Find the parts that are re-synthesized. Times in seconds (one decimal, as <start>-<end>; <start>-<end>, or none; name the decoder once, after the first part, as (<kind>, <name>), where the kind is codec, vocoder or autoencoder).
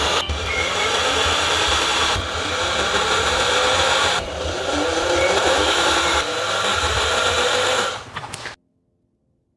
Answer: 1.9-6.2 (vocoder, BigVGAN v2); 6.7-7.3